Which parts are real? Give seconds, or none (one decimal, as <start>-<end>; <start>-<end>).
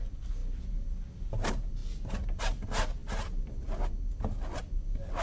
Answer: 0.0-5.2